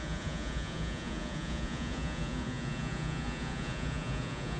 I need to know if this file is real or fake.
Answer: fake